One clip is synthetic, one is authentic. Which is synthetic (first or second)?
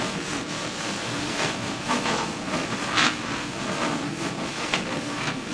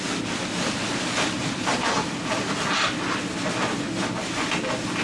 first